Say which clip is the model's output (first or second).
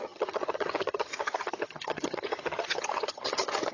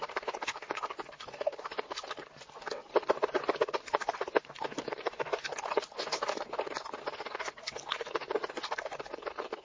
first